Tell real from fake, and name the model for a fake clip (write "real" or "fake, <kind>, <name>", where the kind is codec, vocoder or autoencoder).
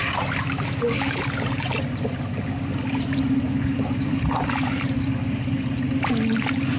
real